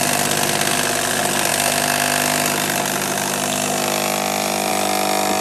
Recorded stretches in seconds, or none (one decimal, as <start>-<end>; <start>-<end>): 0.0-5.4